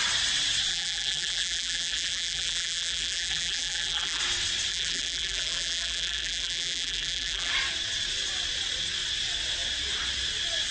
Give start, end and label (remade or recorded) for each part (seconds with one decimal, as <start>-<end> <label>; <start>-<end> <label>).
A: 0.0-0.7 recorded; 0.7-4.2 remade; 4.2-4.7 recorded; 4.7-7.5 remade; 7.5-10.7 recorded